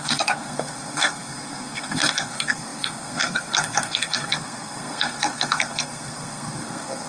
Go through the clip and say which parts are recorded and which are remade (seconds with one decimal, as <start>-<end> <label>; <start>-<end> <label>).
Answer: 0.0-7.1 remade

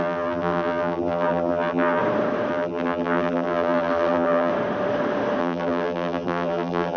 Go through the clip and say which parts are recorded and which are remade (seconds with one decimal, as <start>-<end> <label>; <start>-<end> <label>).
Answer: 0.0-2.0 remade; 2.0-2.5 recorded; 2.5-4.5 remade; 4.5-5.4 recorded; 5.4-7.0 remade